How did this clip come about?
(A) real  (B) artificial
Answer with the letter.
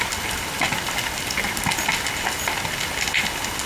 A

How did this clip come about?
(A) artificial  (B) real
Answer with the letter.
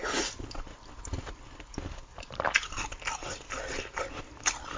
B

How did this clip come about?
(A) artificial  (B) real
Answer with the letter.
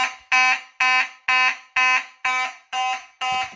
B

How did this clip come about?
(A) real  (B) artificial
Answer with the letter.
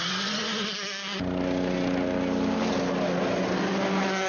A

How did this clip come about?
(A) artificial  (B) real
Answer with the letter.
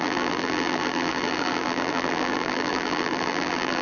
A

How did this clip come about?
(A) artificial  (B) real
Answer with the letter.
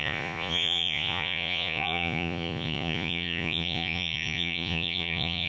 A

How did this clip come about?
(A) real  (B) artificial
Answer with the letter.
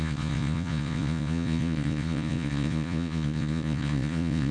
B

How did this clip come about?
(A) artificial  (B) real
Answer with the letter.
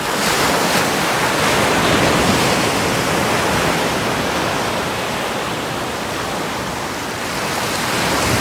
B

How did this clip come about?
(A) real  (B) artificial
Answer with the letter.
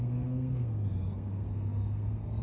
B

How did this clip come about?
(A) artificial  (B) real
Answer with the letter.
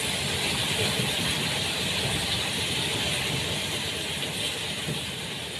B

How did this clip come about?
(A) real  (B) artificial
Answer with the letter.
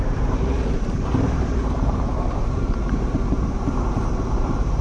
B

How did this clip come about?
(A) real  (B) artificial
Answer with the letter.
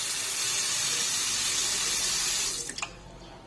A